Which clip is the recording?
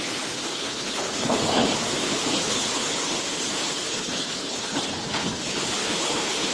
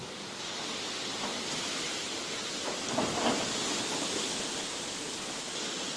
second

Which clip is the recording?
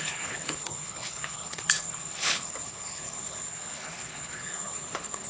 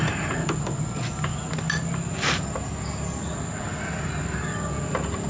second